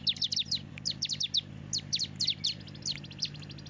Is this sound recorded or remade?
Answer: recorded